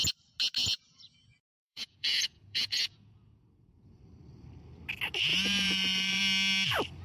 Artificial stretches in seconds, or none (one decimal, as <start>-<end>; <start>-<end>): 0.6-4.0; 5.3-6.2